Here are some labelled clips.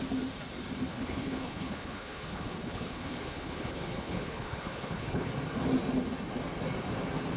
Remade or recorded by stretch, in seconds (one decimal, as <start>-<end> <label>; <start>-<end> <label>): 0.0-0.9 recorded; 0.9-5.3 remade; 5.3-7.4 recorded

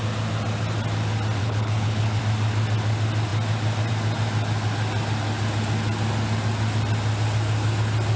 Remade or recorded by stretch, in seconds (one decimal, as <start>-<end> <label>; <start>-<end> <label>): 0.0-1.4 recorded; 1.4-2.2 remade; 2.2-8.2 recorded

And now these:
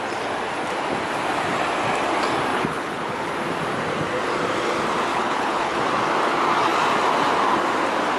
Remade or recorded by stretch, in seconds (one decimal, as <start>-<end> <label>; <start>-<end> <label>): 0.0-2.5 recorded; 2.5-3.3 remade; 3.3-5.1 recorded; 5.1-5.8 remade; 5.8-8.2 recorded

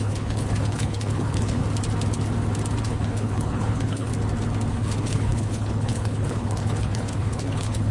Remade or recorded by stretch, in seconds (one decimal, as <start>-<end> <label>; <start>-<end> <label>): 0.0-1.6 remade; 1.6-2.8 recorded; 2.8-4.1 remade; 4.1-4.7 recorded; 4.7-7.9 remade